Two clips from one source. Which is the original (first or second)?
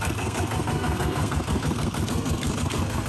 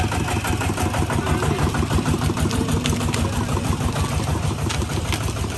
second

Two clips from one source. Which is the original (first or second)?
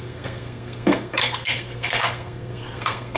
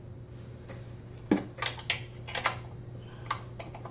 second